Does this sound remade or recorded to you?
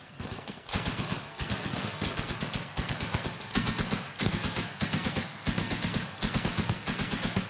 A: remade